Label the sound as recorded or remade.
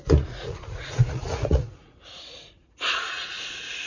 remade